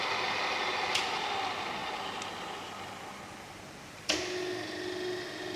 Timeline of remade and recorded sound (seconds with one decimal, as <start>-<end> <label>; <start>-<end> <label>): 0.0-5.6 recorded